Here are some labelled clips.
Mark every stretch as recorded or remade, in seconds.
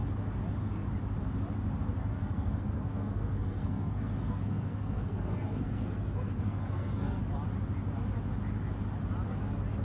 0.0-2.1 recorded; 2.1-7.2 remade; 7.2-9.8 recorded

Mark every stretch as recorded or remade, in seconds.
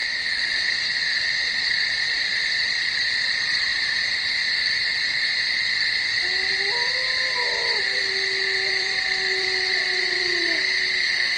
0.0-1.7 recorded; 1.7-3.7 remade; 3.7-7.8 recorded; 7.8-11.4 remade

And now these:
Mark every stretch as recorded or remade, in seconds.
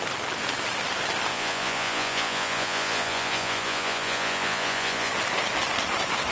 0.0-1.3 recorded; 1.3-5.1 remade; 5.1-6.3 recorded